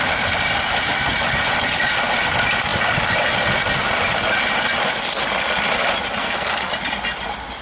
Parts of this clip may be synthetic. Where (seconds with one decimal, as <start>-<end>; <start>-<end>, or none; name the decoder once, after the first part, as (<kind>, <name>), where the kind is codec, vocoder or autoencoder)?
6.2-6.7 (codec, SNAC)